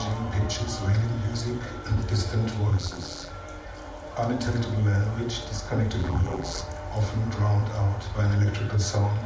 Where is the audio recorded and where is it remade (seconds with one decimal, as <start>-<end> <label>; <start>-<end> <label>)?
0.0-2.7 recorded; 2.7-3.3 remade; 3.3-6.0 recorded; 6.0-6.6 remade; 6.6-9.3 recorded